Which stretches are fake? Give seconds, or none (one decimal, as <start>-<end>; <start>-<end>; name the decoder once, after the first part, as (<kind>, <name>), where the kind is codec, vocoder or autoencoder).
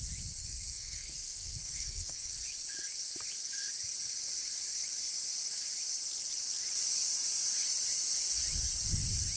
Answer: 0.4-2.3 (codec, SNAC)